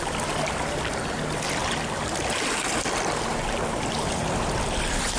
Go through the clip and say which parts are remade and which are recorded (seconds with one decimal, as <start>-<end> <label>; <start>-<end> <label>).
0.0-5.2 recorded